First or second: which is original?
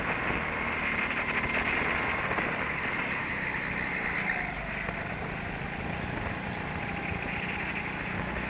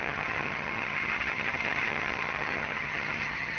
first